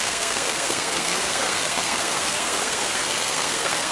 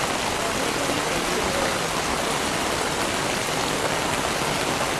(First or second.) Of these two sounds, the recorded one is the second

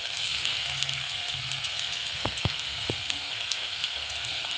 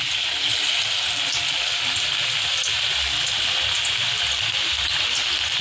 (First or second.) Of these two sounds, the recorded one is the second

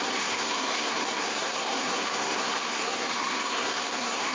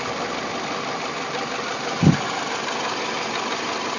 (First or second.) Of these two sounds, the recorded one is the second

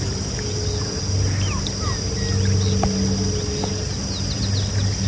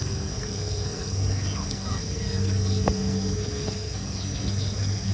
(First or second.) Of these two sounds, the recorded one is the first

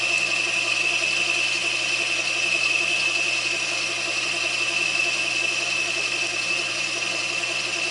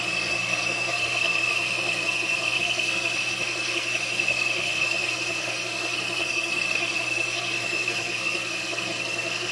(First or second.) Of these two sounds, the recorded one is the first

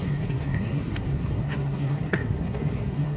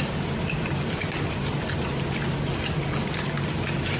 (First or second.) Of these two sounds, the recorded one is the second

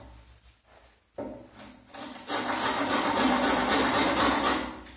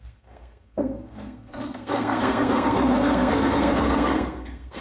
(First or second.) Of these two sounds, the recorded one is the first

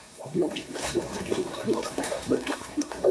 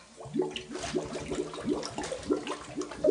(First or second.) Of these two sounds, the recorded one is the second